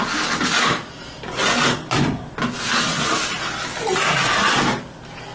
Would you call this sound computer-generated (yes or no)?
no